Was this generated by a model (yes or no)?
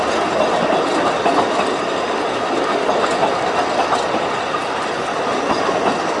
no